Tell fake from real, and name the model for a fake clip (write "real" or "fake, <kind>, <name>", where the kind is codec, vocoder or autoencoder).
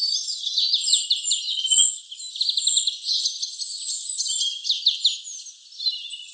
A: real